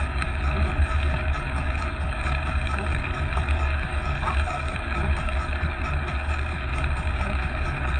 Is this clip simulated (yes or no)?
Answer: yes